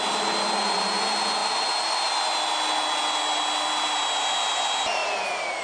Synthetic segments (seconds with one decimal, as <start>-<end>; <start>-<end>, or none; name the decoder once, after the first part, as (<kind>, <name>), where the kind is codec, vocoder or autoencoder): none